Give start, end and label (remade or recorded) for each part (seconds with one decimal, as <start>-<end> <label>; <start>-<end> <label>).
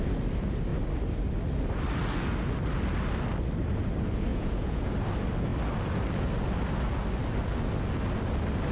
0.0-4.3 recorded; 4.3-4.9 remade; 4.9-8.7 recorded